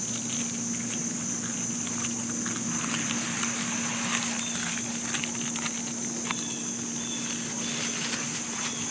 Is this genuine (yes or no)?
yes